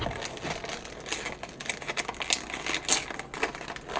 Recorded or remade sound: recorded